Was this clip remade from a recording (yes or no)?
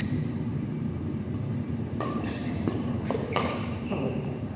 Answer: yes